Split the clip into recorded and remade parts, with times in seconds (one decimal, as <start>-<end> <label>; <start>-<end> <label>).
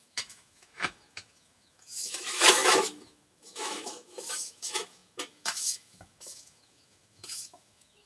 0.0-8.1 remade